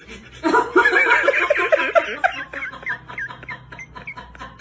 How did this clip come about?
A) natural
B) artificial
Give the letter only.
A